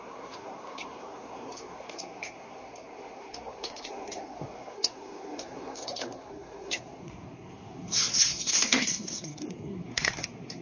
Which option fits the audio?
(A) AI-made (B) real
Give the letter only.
A